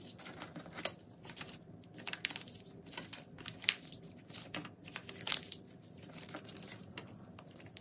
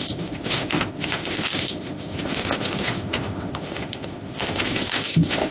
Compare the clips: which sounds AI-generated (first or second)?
second